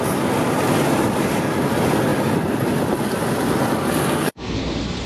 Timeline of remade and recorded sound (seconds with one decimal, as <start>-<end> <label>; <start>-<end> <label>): 0.0-4.0 recorded; 4.0-4.6 remade; 4.6-5.1 recorded